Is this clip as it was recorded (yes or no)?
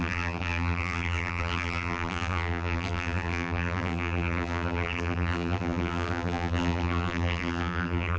no